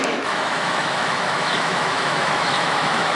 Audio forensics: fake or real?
fake